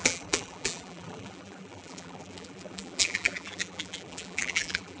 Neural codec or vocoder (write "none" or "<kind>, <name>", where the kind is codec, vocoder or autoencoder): vocoder, BigVGAN v2